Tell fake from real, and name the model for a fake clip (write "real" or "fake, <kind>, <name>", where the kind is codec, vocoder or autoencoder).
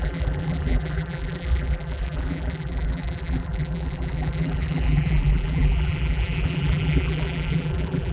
fake, vocoder, BigVGAN v2